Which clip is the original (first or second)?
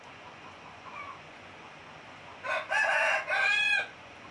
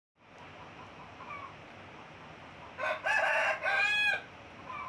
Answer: second